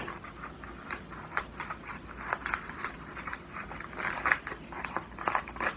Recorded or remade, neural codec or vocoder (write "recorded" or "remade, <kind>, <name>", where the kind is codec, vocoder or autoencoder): recorded